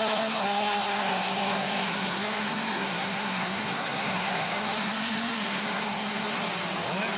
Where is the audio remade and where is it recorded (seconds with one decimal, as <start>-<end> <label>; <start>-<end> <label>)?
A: 0.0-6.4 remade; 6.4-7.2 recorded